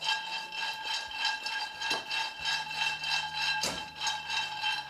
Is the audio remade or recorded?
recorded